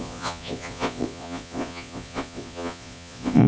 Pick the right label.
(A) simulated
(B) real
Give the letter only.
A